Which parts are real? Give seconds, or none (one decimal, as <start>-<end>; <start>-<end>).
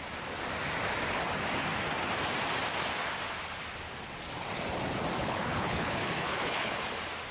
0.0-5.2; 6.8-7.3